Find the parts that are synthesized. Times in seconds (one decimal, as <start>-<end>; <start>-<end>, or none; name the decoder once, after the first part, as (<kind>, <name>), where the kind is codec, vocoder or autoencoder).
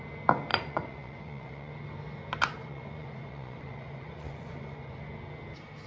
0.5-1.7 (vocoder, Vocos); 2.6-5.0